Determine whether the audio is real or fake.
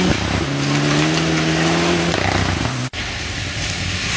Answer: real